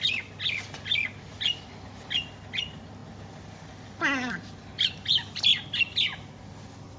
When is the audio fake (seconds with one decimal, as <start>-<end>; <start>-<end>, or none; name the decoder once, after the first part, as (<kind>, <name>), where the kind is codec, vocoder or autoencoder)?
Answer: none